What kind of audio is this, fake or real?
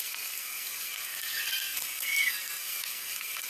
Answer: fake